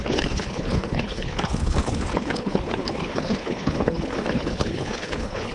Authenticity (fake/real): fake